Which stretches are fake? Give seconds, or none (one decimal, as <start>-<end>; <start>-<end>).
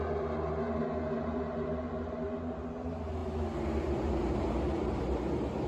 none